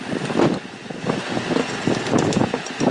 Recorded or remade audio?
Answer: recorded